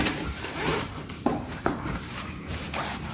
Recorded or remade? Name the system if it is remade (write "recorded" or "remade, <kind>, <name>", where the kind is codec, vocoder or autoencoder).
remade, vocoder, BigVGAN v2